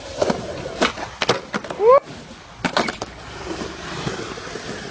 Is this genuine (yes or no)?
yes